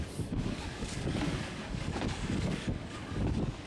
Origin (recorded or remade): remade